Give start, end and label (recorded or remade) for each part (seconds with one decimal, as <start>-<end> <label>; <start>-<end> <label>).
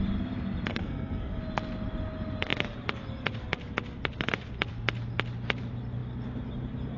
0.0-0.7 recorded; 0.7-1.4 remade; 1.4-7.0 recorded